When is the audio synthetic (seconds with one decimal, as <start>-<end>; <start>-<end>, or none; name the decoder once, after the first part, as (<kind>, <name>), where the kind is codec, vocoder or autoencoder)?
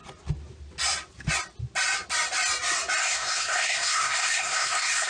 3.0-5.1 (codec, SNAC)